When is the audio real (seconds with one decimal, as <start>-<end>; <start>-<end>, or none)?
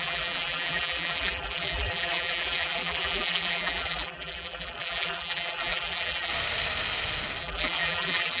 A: 6.3-7.4